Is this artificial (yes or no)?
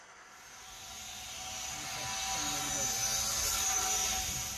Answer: no